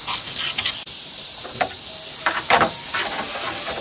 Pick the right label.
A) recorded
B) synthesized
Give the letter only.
A